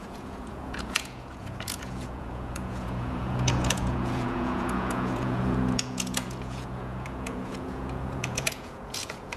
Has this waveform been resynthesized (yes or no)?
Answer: yes